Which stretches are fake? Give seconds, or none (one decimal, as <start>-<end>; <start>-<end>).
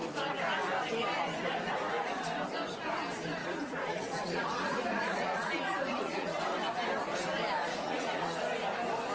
3.4-6.4; 7.6-8.4